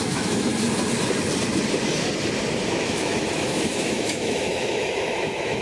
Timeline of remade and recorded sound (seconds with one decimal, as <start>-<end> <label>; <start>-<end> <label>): 0.0-0.5 remade; 0.5-2.8 recorded; 2.8-5.6 remade